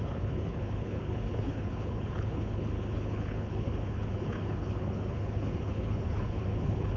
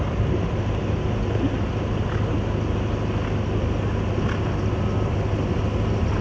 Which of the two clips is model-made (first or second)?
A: first